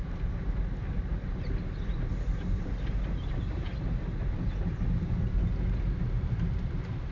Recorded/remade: recorded